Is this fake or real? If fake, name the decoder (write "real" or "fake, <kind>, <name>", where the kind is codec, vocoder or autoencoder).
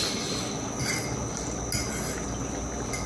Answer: real